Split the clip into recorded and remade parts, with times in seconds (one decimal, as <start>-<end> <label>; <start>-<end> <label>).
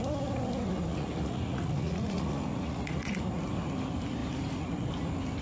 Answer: 0.0-0.9 recorded; 0.9-3.2 remade; 3.2-5.4 recorded